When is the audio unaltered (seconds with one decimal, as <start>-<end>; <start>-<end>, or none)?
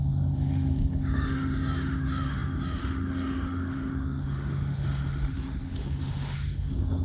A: none